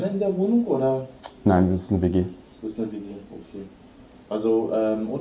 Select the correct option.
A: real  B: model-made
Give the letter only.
A